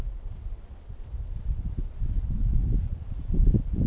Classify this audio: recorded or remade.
recorded